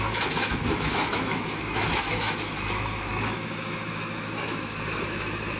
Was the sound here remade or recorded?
remade